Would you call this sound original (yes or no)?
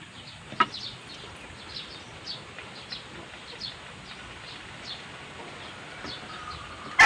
yes